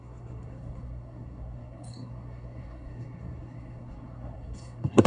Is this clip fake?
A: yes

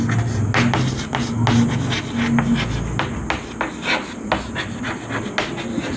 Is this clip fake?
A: no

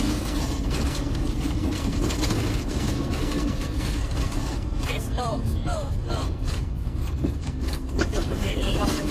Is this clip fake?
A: yes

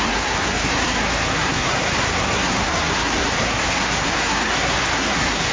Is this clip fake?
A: yes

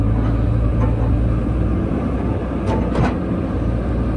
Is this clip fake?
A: no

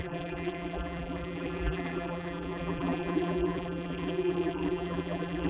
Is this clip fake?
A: yes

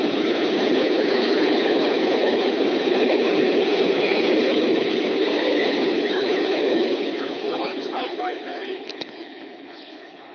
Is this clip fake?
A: yes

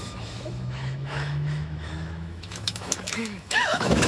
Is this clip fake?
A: yes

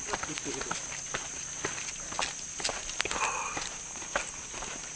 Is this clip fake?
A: no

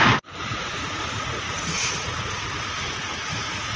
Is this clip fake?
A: yes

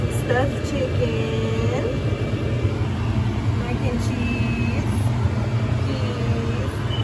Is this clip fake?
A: no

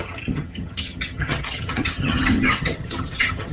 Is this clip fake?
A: yes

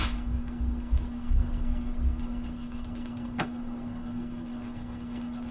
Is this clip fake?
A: yes